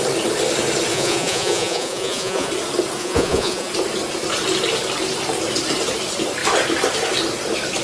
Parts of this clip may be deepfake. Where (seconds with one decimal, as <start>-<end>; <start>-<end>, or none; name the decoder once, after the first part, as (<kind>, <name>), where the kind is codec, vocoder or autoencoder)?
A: 0.9-2.5 (vocoder, Vocos); 3.0-3.7